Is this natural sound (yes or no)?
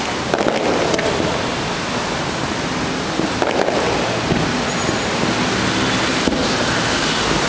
yes